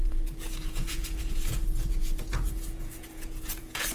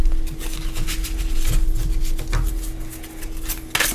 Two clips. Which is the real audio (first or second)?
second